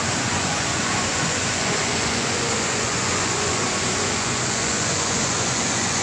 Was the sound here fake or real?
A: fake